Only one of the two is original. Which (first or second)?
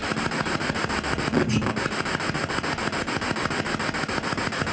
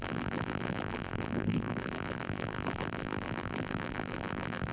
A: first